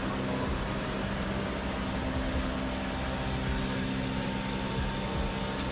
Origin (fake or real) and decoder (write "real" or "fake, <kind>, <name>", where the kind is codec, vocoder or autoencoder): real